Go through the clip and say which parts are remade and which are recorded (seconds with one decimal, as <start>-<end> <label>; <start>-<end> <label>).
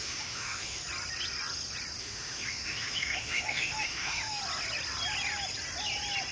0.0-0.8 remade; 0.8-2.0 recorded; 2.0-4.4 remade; 4.4-6.3 recorded